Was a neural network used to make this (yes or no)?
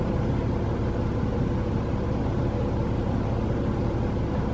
no